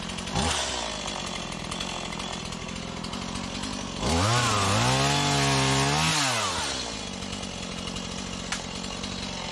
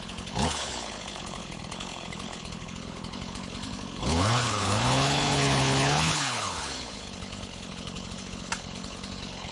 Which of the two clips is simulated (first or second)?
second